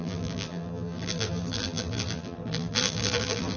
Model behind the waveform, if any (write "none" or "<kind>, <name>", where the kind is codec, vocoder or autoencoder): vocoder, BigVGAN v2